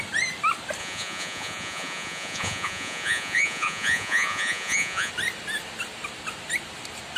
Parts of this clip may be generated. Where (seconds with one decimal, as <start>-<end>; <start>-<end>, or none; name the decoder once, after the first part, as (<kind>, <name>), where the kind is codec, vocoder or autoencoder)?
0.8-5.1 (vocoder, Vocos)